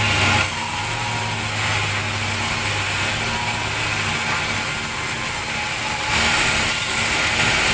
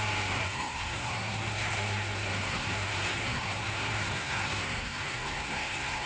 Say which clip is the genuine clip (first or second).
first